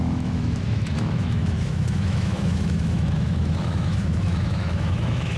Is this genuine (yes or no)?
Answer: no